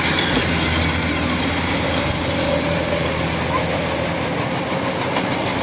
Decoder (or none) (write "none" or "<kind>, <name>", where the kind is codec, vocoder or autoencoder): none